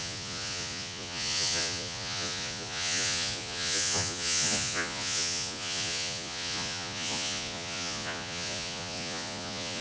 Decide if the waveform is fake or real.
fake